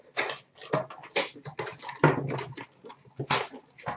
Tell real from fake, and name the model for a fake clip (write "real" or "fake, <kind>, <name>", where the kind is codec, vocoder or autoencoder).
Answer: real